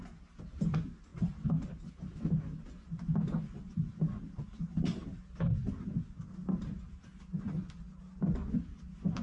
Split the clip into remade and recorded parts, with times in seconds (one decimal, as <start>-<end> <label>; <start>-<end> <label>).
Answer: 0.0-1.1 recorded; 1.1-1.9 remade; 1.9-9.2 recorded